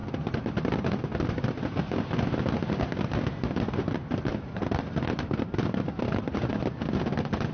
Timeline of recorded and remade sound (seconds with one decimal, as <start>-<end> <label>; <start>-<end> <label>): 0.0-4.3 recorded; 4.3-6.5 remade; 6.5-7.5 recorded